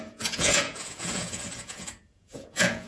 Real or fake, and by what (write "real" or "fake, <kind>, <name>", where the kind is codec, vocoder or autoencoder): fake, vocoder, Vocos